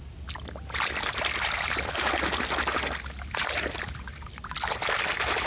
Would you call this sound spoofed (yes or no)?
no